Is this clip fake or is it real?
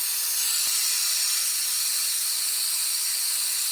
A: fake